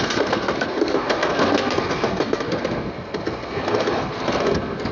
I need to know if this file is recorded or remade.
remade